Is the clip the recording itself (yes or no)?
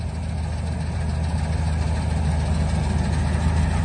yes